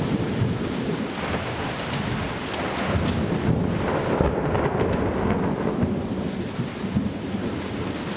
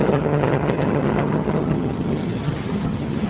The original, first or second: first